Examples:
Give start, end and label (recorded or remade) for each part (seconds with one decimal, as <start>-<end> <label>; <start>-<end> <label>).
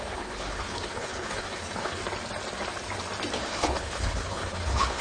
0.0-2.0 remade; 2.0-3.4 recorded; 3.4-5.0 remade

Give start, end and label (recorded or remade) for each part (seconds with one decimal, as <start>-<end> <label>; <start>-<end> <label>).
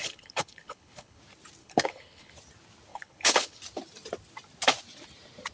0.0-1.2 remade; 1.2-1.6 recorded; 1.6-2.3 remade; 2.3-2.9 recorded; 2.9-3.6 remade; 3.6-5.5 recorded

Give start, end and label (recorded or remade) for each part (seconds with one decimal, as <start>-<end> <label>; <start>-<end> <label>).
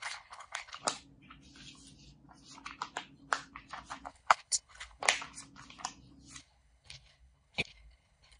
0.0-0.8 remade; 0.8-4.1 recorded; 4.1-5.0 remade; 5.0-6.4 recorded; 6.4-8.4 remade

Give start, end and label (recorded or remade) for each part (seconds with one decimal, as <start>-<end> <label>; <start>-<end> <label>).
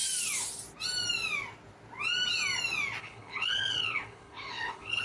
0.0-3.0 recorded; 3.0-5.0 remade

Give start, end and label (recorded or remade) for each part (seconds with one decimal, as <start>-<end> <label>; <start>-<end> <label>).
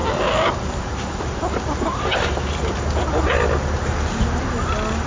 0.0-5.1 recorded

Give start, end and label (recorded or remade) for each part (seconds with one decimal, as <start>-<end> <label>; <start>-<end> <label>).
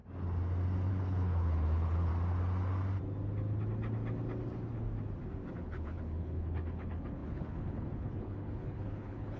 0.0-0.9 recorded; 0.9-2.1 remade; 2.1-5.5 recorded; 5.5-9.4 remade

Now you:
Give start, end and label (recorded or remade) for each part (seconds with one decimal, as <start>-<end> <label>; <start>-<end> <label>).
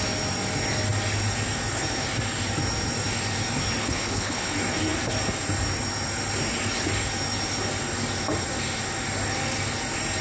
0.0-3.8 recorded; 3.8-4.5 remade; 4.5-10.2 recorded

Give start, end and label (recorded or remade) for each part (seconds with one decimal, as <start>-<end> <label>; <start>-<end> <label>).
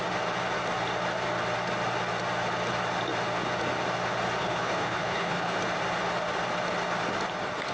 0.0-4.4 recorded; 4.4-5.6 remade; 5.6-7.7 recorded